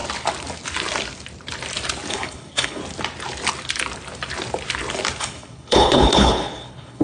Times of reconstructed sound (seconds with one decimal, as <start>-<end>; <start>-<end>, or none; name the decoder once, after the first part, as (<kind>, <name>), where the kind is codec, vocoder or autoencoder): 2.1-2.8 (codec, HILCodec); 5.2-7.0